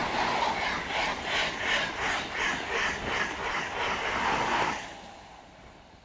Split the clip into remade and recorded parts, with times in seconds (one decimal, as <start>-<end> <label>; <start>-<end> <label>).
0.0-6.0 recorded